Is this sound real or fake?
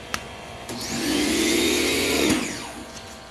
fake